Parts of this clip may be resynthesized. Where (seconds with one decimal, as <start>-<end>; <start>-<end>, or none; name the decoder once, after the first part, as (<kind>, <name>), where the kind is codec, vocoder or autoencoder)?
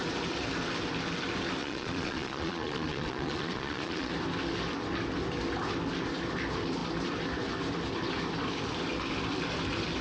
1.6-4.1 (vocoder, Vocos)